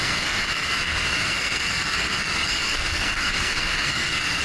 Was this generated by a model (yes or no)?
yes